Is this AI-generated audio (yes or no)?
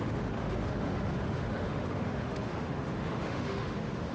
yes